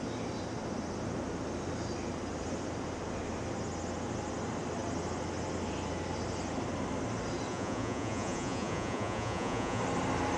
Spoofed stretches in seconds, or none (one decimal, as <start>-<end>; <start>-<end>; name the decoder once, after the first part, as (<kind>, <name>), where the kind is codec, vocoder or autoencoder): 7.5-9.8 (vocoder, Vocos)